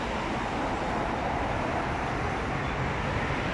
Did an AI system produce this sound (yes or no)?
no